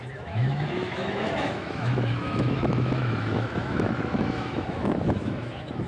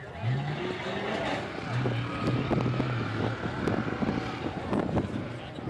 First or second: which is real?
second